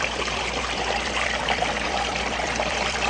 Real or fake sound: fake